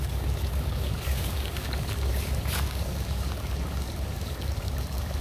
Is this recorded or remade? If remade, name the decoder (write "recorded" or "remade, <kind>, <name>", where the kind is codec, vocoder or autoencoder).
remade, codec, DAC